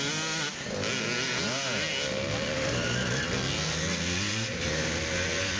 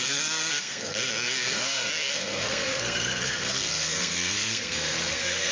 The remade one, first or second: second